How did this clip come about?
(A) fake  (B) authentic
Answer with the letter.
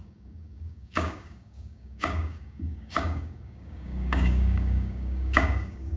A